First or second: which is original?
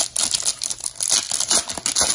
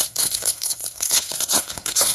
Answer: first